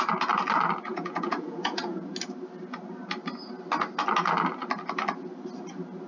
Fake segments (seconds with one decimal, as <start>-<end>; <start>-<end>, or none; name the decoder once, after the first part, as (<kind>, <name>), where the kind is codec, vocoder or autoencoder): 0.9-2.1 (vocoder, Vocos)